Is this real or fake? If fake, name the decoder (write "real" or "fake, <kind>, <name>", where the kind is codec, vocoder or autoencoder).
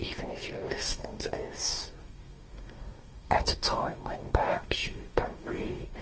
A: fake, codec, DAC